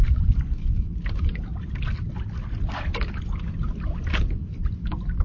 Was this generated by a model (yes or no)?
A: no